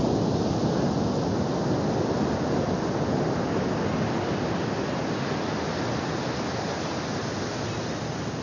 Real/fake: real